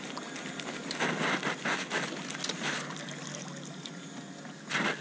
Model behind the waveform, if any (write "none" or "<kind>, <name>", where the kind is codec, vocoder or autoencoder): none